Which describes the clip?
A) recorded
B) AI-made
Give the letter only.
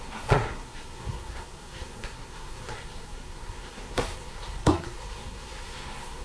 B